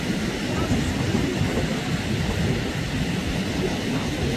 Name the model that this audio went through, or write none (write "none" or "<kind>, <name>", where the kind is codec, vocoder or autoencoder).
none